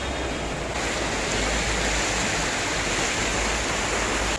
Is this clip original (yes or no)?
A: yes